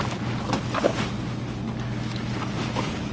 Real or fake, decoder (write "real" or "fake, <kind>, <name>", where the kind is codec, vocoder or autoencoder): real